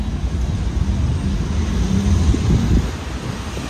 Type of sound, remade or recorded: recorded